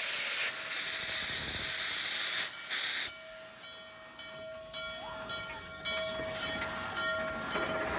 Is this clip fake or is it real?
real